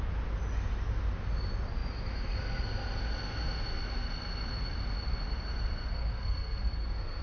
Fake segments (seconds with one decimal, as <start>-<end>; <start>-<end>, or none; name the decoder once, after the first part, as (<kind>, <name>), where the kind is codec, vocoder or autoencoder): 5.9-7.2 (codec, SNAC)